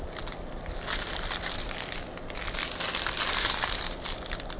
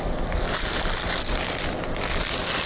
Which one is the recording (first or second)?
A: second